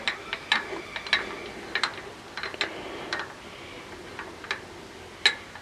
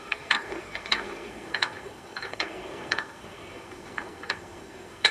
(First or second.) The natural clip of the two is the first